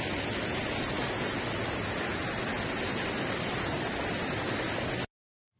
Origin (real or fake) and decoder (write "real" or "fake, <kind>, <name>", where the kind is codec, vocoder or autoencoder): real